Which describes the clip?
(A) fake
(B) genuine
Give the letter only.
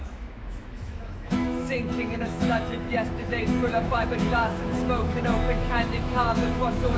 A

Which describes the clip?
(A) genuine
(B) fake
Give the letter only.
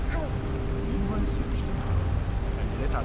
A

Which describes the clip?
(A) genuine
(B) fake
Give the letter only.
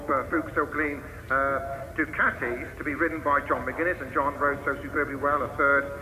A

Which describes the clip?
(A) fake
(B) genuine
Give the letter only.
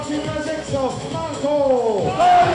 A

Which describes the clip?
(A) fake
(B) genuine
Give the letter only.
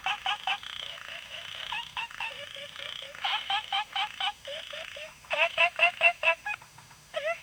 A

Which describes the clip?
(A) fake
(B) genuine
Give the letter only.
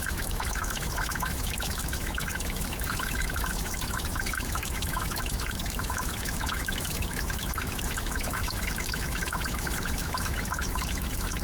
A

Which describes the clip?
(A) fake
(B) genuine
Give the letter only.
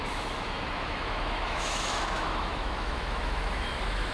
A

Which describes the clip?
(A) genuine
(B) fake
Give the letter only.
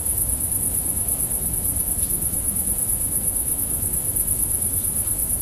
B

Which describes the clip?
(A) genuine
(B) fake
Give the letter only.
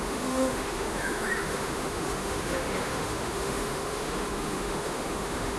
B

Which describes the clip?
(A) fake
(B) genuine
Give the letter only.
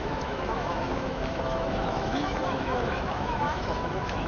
A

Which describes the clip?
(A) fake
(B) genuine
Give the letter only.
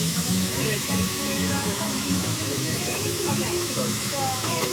A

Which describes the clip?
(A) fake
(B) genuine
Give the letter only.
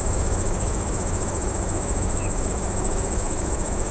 A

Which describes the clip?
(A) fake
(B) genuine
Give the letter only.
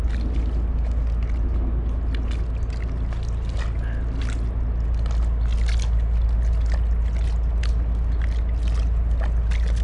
B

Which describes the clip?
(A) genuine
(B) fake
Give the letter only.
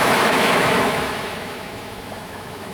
B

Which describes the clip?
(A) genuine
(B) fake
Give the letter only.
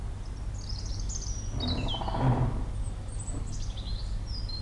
A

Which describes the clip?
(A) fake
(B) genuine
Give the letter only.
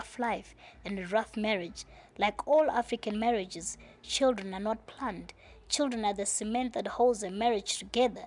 B